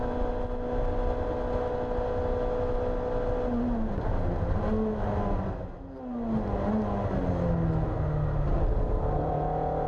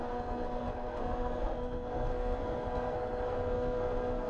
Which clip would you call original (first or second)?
first